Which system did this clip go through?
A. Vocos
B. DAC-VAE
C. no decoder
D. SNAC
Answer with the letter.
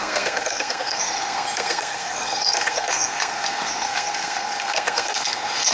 D